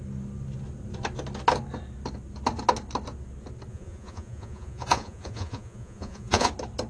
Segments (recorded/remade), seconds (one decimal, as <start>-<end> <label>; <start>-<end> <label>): 0.0-3.7 recorded; 3.7-6.5 remade; 6.5-6.9 recorded